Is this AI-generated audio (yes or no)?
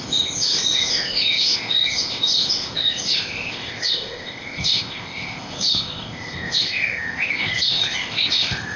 yes